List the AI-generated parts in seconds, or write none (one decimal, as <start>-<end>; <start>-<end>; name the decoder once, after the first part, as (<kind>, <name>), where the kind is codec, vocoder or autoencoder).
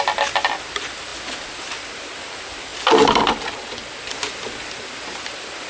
none